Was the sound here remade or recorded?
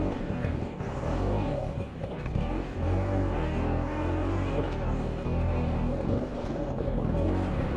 remade